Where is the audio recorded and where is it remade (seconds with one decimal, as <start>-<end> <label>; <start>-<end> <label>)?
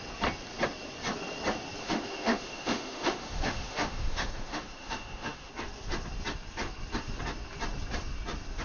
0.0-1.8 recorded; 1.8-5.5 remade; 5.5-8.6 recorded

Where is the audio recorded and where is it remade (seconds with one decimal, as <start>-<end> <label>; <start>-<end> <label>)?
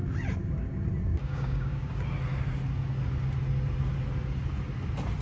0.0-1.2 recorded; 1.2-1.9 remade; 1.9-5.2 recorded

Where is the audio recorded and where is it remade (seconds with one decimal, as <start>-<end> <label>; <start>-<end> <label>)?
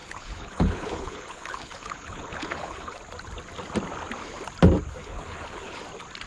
0.0-3.0 remade; 3.0-5.0 recorded; 5.0-5.8 remade; 5.8-6.3 recorded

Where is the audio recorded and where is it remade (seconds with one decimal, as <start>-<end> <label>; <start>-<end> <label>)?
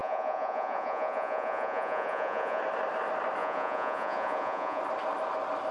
0.0-2.6 remade; 2.6-3.4 recorded; 3.4-4.8 remade; 4.8-5.7 recorded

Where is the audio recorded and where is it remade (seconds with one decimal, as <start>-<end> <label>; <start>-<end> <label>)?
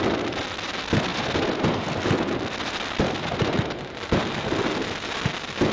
0.0-5.7 recorded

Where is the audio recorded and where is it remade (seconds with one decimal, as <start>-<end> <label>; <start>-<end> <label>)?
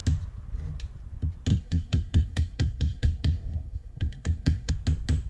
0.0-1.5 recorded; 1.5-4.7 remade; 4.7-5.3 recorded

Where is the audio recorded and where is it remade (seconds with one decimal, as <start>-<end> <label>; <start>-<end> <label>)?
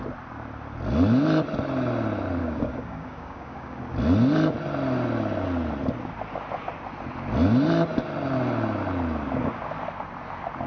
0.0-2.4 recorded; 2.4-3.8 remade; 3.8-10.7 recorded